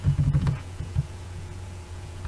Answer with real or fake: fake